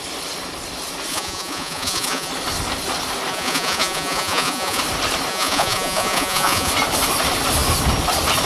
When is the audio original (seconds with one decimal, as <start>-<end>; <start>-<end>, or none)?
0.0-1.1; 2.3-3.3; 4.8-5.3; 6.7-8.5